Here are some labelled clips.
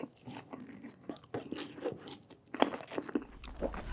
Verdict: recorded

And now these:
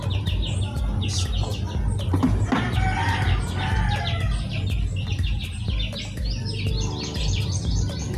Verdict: recorded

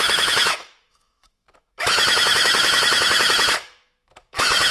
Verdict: remade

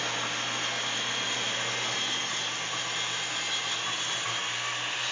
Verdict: recorded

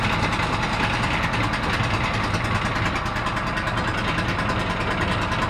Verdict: recorded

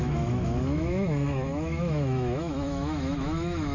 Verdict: remade